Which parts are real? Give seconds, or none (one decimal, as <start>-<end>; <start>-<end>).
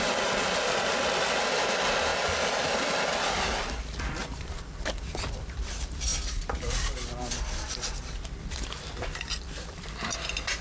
2.1-4.4; 6.1-7.4